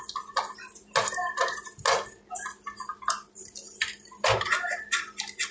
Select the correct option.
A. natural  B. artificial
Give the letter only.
A